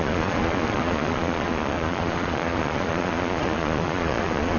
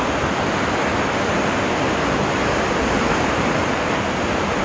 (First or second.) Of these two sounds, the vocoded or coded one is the first